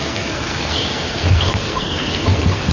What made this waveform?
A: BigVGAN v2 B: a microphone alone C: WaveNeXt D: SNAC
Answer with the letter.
D